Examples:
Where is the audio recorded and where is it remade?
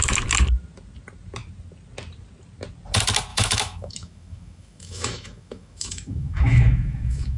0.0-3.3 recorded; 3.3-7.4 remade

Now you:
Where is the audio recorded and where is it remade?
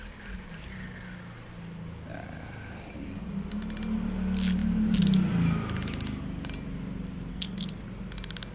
0.0-7.3 recorded; 7.3-7.8 remade; 7.8-8.5 recorded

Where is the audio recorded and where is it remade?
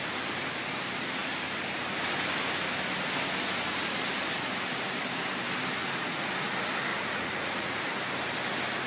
0.0-5.8 recorded; 5.8-6.3 remade; 6.3-6.9 recorded; 6.9-7.8 remade; 7.8-8.9 recorded